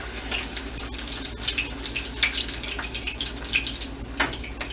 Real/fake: real